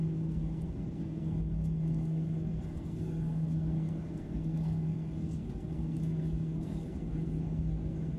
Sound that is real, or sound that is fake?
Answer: fake